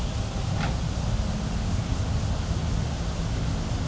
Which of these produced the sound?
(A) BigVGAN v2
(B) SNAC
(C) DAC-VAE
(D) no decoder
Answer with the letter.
D